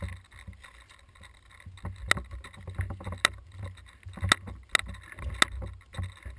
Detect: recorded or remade recorded